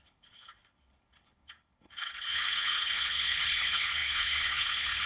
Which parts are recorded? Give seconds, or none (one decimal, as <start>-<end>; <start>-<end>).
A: none